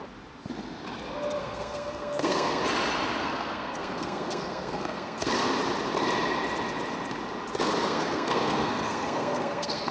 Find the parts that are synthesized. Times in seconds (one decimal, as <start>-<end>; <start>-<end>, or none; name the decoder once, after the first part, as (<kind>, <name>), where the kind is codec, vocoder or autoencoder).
1.4-2.6 (codec, SNAC); 3.2-5.3; 7.8-9.9